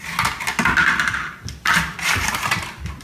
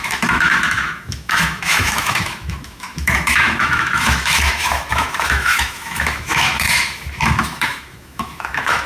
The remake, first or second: second